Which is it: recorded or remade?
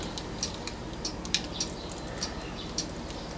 recorded